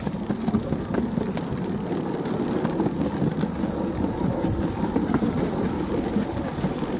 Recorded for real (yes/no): yes